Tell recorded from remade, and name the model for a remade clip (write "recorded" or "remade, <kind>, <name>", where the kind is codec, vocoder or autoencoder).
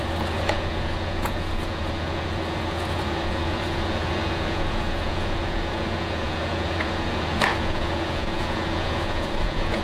remade, vocoder, Vocos